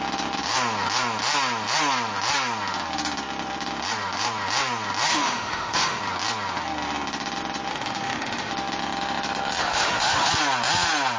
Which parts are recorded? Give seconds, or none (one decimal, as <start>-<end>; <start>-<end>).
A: 0.0-5.1; 6.0-7.7; 8.5-9.6; 10.3-11.2